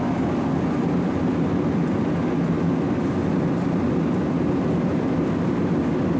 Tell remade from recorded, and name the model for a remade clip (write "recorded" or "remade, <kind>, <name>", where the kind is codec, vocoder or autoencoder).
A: recorded